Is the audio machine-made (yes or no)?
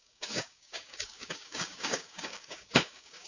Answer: yes